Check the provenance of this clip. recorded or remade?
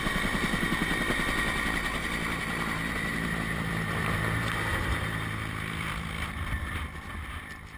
remade